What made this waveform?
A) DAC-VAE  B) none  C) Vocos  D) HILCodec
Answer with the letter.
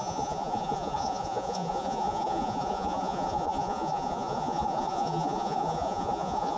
C